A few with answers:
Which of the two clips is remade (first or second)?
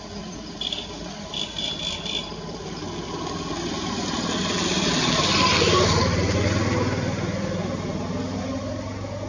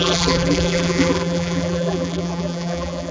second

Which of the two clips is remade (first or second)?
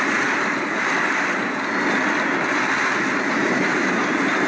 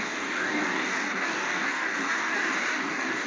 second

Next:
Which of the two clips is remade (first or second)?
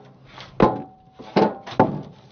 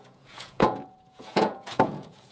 second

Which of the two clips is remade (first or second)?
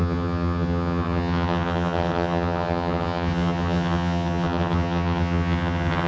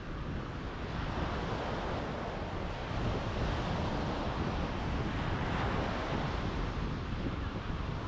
first